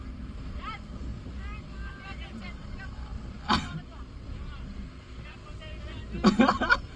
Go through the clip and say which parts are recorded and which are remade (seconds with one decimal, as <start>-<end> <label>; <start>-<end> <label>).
0.0-1.1 remade; 1.1-1.6 recorded; 1.6-3.1 remade; 3.1-6.3 recorded; 6.3-7.0 remade

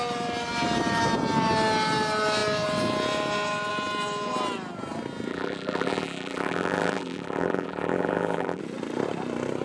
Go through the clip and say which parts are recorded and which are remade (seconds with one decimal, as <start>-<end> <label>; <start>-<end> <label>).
0.0-5.3 recorded; 5.3-8.6 remade; 8.6-9.6 recorded

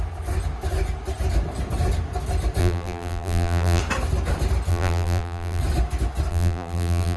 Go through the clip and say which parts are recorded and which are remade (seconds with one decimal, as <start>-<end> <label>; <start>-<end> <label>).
0.0-2.6 recorded; 2.6-3.8 remade; 3.8-4.7 recorded; 4.7-5.6 remade; 5.6-6.3 recorded; 6.3-7.2 remade

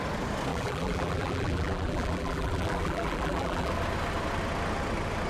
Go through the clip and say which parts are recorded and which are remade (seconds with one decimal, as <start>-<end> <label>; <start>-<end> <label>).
0.0-0.5 recorded; 0.5-3.7 remade; 3.7-5.3 recorded

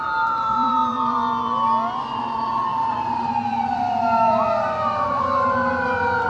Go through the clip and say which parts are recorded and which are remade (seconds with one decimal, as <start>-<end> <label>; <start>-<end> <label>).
0.0-0.8 remade; 0.8-2.0 recorded; 2.0-6.3 remade

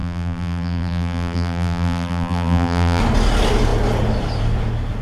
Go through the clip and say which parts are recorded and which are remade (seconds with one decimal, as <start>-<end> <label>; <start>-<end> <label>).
0.0-3.0 remade; 3.0-5.0 recorded

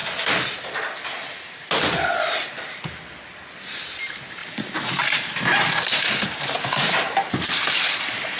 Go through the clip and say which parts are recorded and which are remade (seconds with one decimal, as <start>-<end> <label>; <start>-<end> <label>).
0.0-3.8 recorded; 3.8-8.4 remade

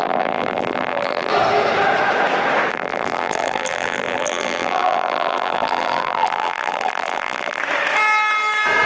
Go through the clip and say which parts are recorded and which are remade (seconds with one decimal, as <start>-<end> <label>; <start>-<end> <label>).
0.0-1.3 remade; 1.3-2.7 recorded; 2.7-7.6 remade; 7.6-8.9 recorded